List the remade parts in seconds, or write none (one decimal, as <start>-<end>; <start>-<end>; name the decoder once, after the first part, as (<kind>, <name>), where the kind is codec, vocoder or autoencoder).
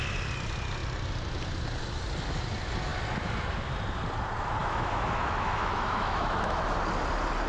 4.6-6.6 (autoencoder, DAC-VAE)